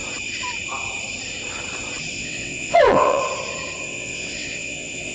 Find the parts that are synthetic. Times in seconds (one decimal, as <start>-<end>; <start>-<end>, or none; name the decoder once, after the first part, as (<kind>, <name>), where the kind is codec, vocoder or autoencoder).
2.1-3.2 (vocoder, WaveNeXt); 3.8-5.1